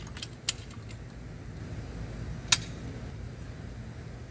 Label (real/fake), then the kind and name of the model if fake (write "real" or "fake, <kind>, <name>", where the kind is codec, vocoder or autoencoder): real